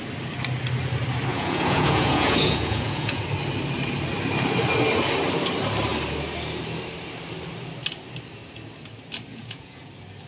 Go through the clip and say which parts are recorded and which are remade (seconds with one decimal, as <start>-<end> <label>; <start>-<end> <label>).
0.0-1.3 recorded; 1.3-3.2 remade; 3.2-9.3 recorded; 9.3-9.9 remade; 9.9-10.3 recorded